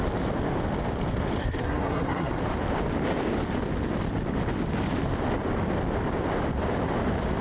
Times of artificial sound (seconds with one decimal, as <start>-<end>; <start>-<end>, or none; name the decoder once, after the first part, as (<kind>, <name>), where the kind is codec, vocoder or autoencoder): 1.4-2.3 (codec, SNAC)